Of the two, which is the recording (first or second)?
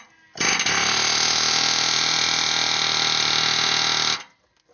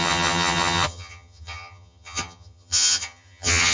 first